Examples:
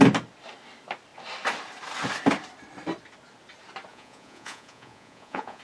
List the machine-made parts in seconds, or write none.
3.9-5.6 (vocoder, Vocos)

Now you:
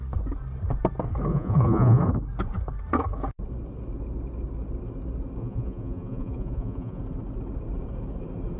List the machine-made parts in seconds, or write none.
1.3-2.0 (vocoder, Vocos); 5.4-7.0

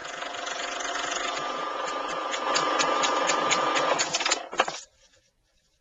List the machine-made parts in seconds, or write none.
0.0-5.8 (vocoder, Vocos)

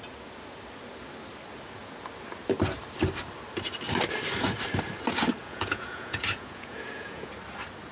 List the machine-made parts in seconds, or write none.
5.4-7.3 (vocoder, Vocos)

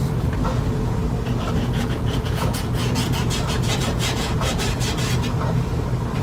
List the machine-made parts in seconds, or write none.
0.6-1.0 (vocoder, Vocos); 1.6-2.8; 3.6-4.5